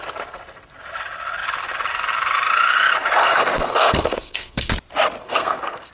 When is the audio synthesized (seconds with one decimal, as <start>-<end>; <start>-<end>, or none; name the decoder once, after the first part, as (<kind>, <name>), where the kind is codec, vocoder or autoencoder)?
3.2-4.7 (codec, SNAC); 5.2-5.9